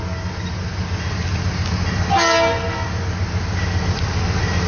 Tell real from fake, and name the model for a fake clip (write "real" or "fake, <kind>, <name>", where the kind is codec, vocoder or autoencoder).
real